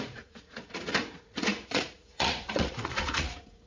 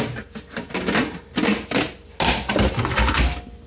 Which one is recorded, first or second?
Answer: second